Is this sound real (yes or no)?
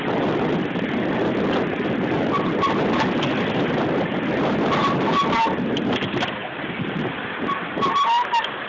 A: yes